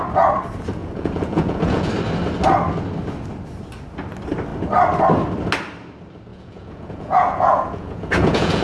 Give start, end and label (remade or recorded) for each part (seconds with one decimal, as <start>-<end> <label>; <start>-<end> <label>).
0.0-0.8 recorded; 0.8-1.9 remade; 1.9-6.3 recorded; 6.3-8.6 remade